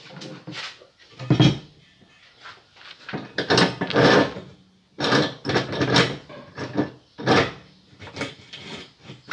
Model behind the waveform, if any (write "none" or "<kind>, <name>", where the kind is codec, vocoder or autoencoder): none